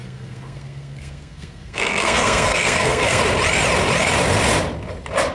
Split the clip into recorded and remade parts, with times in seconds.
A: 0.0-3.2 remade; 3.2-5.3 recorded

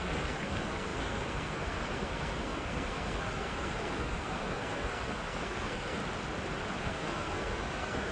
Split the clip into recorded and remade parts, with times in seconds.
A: 0.0-6.0 remade; 6.0-6.8 recorded; 6.8-8.1 remade

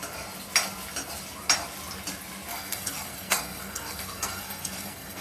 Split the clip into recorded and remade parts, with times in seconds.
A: 0.0-2.5 recorded; 2.5-5.2 remade

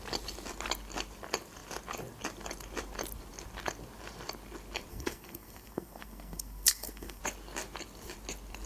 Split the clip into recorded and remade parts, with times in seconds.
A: 0.0-4.9 recorded; 4.9-7.2 remade; 7.2-8.7 recorded

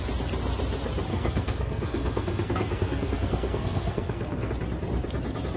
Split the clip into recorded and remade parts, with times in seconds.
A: 0.0-1.1 recorded; 1.1-4.5 remade; 4.5-5.6 recorded